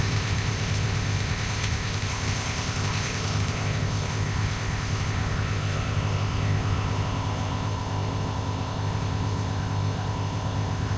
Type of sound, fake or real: fake